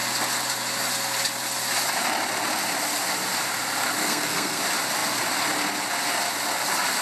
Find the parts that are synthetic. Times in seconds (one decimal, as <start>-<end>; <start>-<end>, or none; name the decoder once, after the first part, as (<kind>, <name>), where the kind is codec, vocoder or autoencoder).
4.0-4.6 (codec, SNAC)